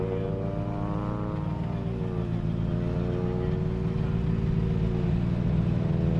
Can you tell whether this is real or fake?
real